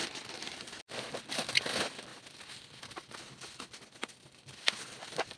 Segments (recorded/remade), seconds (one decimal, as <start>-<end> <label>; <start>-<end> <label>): 0.0-5.4 recorded